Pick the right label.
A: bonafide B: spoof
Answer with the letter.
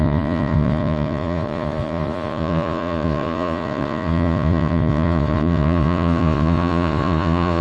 B